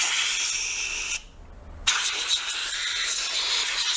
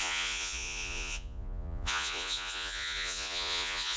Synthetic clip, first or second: second